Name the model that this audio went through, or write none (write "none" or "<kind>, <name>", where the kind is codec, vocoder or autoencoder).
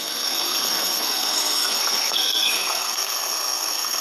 codec, SNAC